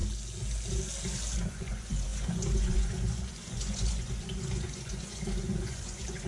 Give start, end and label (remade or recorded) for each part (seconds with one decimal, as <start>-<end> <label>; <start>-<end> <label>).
0.0-1.5 recorded; 1.5-6.3 remade